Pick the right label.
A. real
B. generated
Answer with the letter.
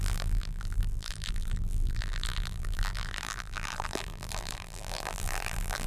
B